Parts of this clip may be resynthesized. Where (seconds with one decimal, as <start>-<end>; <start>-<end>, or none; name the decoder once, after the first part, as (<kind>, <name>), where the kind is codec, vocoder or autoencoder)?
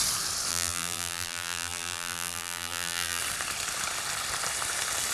0.5-3.2 (vocoder, BigVGAN v2)